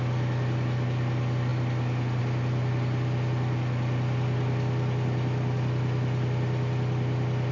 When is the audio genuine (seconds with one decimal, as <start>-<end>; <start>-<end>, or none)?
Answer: 0.0-7.5